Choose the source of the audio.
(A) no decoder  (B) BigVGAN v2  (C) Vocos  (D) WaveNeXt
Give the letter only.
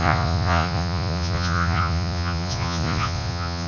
C